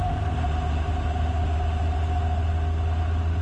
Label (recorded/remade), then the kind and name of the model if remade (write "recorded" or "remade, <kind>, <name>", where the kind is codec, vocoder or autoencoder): recorded